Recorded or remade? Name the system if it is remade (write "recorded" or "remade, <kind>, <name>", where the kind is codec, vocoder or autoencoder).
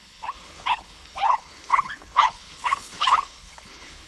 remade, codec, HILCodec